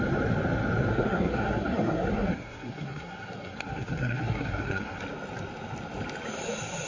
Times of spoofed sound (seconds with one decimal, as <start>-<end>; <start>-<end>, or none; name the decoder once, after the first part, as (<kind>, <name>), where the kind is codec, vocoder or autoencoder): 0.9-5.0 (codec, SNAC)